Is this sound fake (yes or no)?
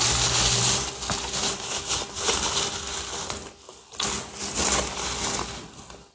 no